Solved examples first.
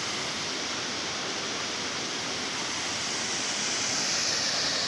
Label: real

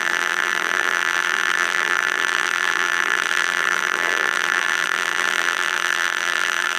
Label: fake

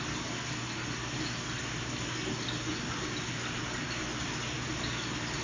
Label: real